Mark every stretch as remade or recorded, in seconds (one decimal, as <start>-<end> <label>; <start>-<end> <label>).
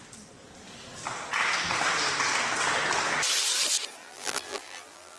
0.0-4.0 recorded; 4.0-5.2 remade